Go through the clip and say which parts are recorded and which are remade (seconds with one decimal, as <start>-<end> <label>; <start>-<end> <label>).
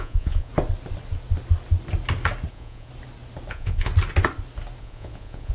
0.0-0.5 remade; 0.5-2.5 recorded; 2.5-2.9 remade; 2.9-3.5 recorded; 3.5-3.9 remade; 3.9-4.8 recorded; 4.8-5.5 remade